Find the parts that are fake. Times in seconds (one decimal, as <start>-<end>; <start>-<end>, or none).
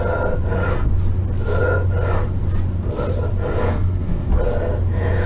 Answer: 3.6-4.3